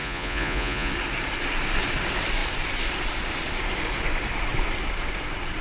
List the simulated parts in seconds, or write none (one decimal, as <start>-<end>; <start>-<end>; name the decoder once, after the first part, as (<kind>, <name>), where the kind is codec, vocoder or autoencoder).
0.0-0.9 (vocoder, Vocos)